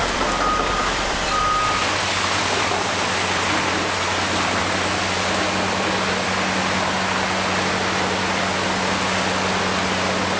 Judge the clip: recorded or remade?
recorded